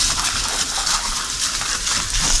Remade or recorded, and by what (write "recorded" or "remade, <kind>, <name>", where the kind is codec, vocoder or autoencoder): recorded